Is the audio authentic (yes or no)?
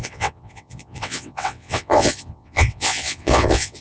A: no